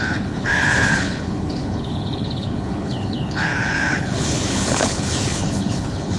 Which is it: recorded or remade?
remade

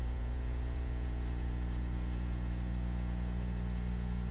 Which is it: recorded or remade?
remade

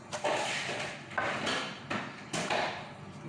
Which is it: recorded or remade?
recorded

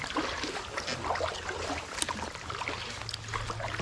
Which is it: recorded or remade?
recorded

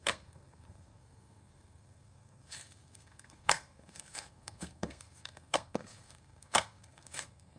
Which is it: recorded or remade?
remade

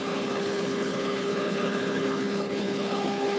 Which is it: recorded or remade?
remade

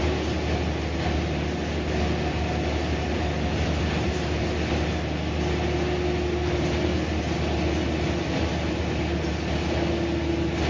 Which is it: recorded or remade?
recorded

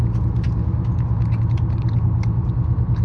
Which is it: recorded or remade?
recorded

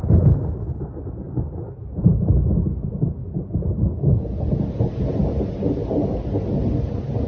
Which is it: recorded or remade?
recorded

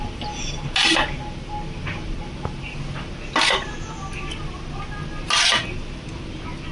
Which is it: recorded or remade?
recorded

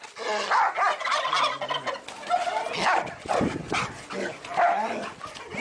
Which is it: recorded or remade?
recorded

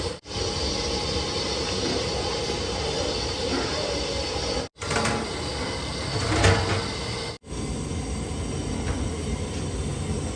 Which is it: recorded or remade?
recorded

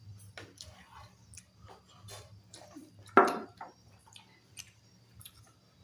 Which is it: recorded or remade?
recorded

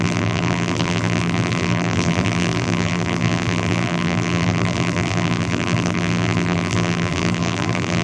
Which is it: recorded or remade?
remade